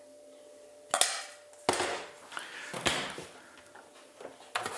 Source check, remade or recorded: recorded